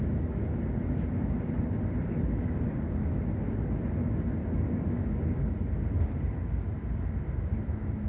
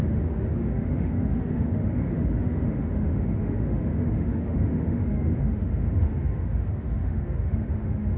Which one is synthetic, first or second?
second